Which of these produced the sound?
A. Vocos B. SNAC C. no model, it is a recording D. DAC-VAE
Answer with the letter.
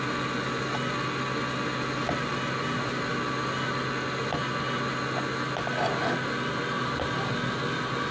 C